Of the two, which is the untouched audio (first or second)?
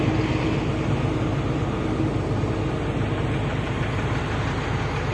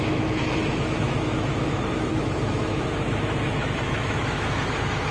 first